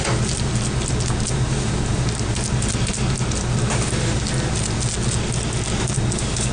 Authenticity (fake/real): real